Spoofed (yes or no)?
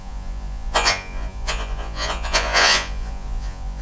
yes